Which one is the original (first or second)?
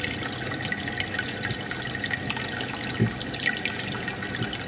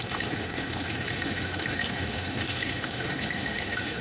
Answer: first